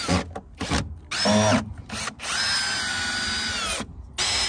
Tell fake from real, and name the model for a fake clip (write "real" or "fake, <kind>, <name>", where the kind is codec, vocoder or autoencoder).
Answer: real